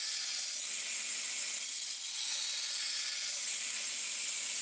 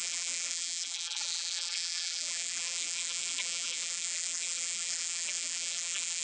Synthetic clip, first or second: second